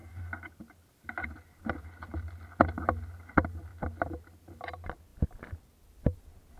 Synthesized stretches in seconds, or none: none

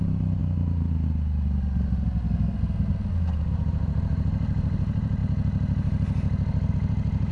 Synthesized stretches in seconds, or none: 0.0-0.4 (vocoder, BigVGAN v2); 3.5-5.2; 6.7-7.3

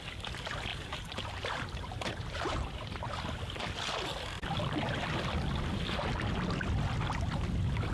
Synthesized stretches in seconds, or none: 0.7-3.1 (vocoder, BigVGAN v2)

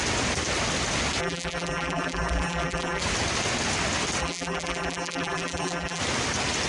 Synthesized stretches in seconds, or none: 1.2-3.0 (vocoder, BigVGAN v2); 4.2-6.0

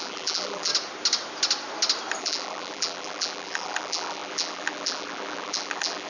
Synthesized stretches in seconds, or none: 0.0-0.7 (vocoder, BigVGAN v2); 2.2-6.1

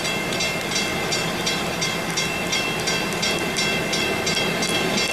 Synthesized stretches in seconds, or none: none

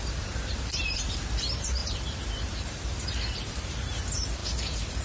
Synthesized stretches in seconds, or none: 0.0-5.0 (vocoder, BigVGAN v2)